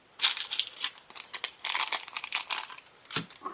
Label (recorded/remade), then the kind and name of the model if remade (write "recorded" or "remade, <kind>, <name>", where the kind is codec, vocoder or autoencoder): recorded